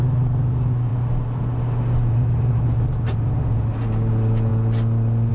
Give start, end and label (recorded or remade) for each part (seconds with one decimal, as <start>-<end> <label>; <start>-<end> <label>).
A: 0.0-5.3 recorded